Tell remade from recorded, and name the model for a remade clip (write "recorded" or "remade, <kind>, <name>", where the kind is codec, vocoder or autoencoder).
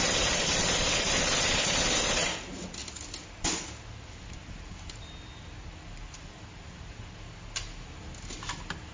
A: recorded